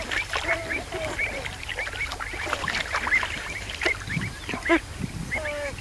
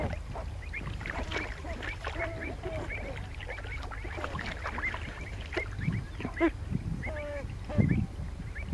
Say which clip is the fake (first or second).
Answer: first